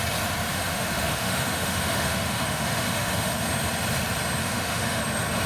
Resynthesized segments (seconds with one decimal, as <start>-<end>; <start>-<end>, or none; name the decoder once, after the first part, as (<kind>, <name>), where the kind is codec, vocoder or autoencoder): 0.5-3.3 (autoencoder, DAC-VAE); 4.4-5.0